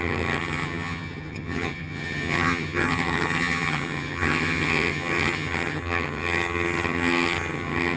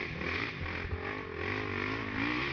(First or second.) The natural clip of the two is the second